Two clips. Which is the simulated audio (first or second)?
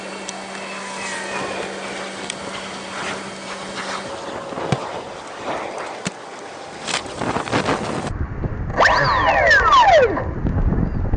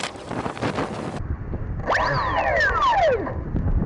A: second